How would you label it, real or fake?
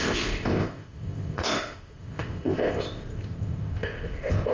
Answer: fake